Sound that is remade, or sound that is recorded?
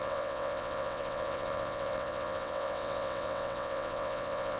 remade